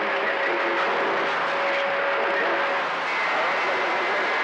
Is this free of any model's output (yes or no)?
yes